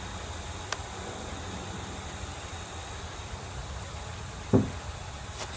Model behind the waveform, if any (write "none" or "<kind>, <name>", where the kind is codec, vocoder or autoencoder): none